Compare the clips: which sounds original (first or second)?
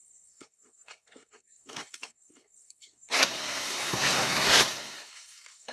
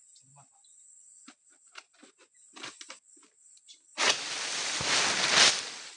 second